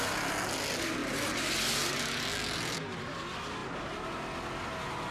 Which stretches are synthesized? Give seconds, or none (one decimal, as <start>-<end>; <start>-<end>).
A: none